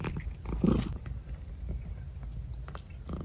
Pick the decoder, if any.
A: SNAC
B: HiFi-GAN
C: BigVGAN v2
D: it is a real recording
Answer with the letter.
D